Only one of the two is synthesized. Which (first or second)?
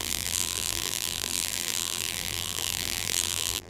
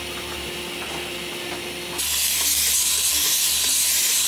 first